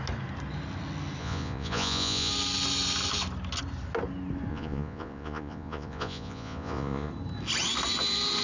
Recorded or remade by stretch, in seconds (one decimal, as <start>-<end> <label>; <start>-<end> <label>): 0.0-1.2 recorded; 1.2-2.3 remade; 2.3-4.5 recorded; 4.5-7.1 remade; 7.1-8.4 recorded